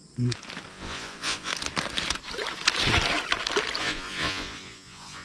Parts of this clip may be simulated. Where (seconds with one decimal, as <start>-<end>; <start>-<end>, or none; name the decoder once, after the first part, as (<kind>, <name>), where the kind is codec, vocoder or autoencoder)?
0.7-1.5 (vocoder, Vocos); 3.8-5.2